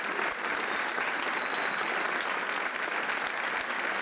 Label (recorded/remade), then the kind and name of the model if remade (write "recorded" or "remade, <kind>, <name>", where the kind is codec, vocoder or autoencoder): recorded